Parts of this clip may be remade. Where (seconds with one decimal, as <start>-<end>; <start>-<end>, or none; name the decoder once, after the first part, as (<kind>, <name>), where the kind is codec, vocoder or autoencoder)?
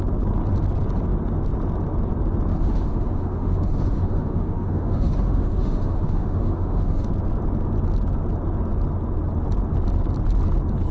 2.5-7.1 (autoencoder, DAC-VAE)